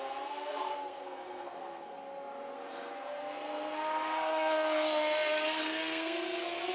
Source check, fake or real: fake